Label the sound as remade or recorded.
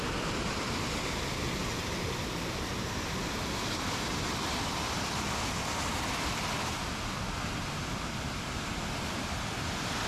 recorded